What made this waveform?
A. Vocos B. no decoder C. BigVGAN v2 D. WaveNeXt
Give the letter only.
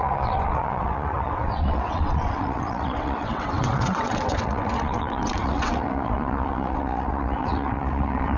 D